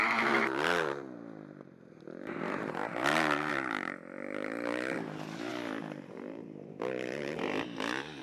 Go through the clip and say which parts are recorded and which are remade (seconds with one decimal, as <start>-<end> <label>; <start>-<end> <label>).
0.0-8.2 recorded